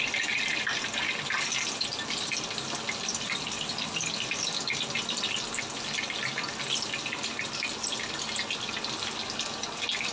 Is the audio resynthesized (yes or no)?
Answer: no